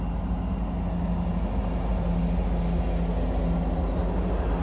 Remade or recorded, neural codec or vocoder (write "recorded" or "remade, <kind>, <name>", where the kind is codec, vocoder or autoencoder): recorded